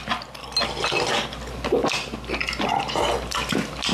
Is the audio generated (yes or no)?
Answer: no